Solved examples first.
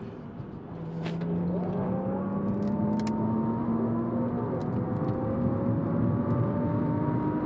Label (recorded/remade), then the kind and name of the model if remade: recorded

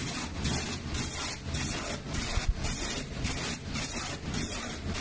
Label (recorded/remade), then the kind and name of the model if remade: recorded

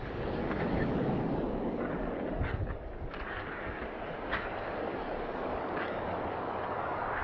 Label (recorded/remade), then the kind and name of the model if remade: remade, codec, DAC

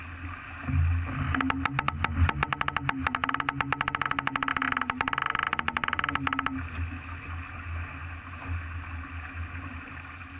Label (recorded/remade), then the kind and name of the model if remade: recorded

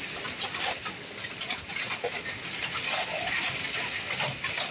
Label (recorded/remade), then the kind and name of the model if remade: recorded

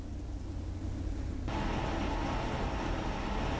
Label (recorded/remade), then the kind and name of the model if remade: recorded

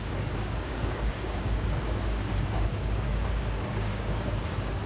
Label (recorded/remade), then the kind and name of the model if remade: remade, codec, DAC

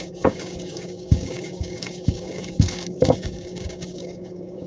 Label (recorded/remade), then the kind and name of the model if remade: remade, codec, DAC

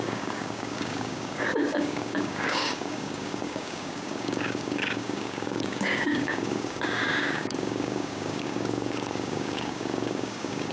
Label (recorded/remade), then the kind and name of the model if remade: remade, codec, DAC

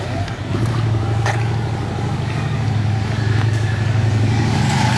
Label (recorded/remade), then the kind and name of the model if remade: remade, codec, DAC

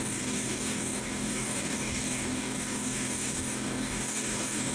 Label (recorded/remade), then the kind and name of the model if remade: remade, codec, DAC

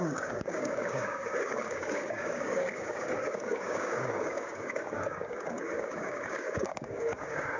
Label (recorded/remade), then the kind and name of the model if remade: remade, codec, DAC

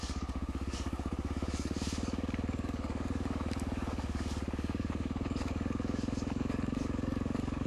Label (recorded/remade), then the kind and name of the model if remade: remade, codec, DAC